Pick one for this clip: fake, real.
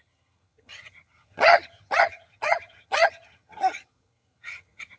fake